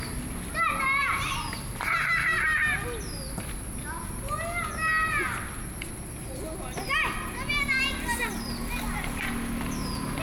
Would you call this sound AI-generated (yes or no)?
no